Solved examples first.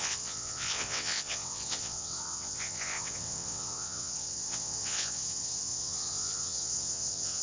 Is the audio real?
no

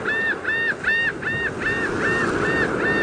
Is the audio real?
yes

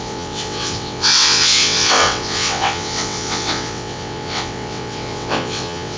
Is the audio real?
no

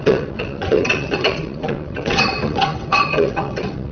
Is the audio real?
no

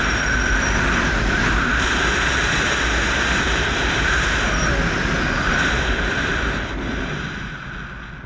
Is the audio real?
yes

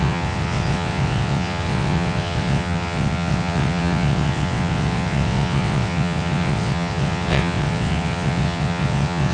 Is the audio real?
no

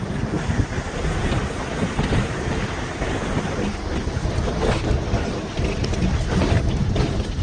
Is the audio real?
yes